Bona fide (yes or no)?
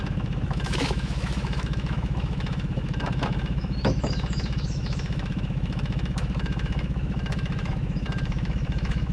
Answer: no